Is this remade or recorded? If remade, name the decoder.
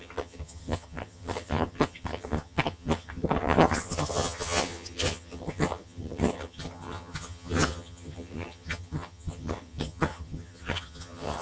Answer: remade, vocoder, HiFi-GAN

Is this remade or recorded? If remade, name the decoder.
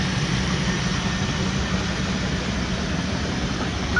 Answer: remade, vocoder, BigVGAN v2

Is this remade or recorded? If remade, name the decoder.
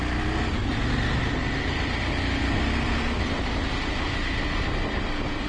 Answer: recorded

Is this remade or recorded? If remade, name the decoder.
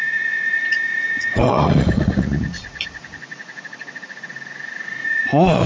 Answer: remade, vocoder, Vocos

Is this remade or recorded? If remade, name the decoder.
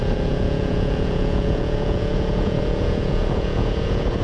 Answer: remade, vocoder, Vocos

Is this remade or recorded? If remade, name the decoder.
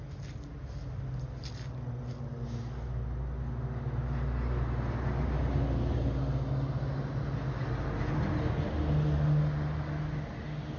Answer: recorded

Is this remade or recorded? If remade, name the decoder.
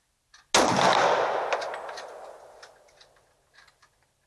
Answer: recorded